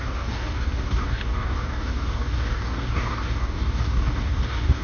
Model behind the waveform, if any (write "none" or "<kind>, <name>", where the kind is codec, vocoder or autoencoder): codec, DAC